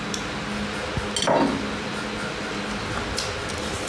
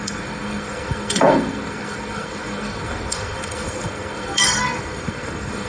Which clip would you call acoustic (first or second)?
first